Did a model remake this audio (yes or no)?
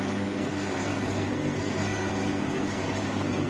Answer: yes